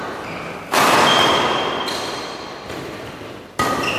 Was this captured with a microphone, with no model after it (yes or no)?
yes